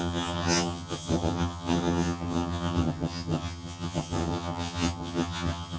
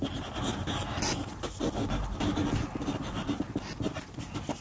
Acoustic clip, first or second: second